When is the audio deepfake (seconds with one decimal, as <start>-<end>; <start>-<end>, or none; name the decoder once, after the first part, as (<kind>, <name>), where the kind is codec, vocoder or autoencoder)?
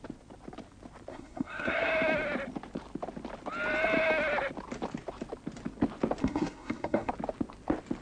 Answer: 1.1-1.9 (codec, SNAC); 6.2-7.1